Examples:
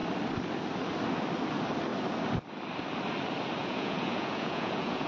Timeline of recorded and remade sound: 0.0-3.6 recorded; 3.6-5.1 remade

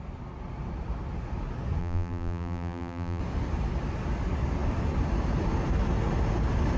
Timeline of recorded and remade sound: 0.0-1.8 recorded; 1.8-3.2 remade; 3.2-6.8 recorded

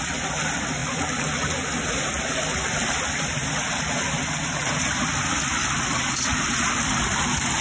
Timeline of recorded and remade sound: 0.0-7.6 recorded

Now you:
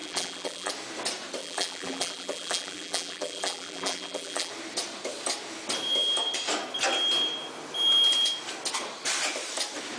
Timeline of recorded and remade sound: 0.0-0.7 remade; 0.7-1.4 recorded; 1.4-4.5 remade; 4.5-10.0 recorded

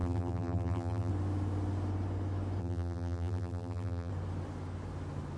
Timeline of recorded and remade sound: 0.0-1.1 remade; 1.1-2.6 recorded; 2.6-4.1 remade; 4.1-5.4 recorded